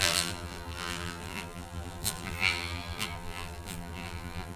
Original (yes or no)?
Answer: no